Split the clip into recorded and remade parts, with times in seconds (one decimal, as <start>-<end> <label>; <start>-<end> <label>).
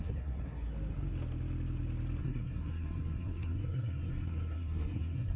0.0-0.7 remade; 0.7-2.2 recorded; 2.2-5.4 remade